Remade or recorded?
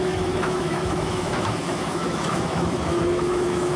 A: remade